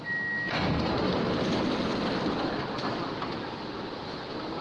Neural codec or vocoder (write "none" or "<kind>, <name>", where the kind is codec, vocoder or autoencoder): none